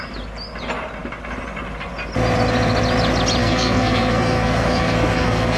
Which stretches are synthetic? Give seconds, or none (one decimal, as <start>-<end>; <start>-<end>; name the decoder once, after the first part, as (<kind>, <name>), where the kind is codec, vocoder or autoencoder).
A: 3.4-5.6 (codec, SNAC)